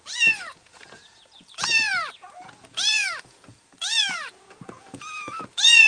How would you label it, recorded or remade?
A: remade